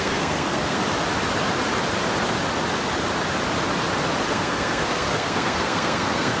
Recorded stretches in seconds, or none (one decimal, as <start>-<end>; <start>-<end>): 0.8-4.3